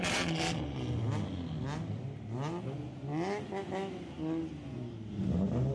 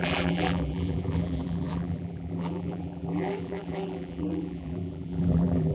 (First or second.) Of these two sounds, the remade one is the second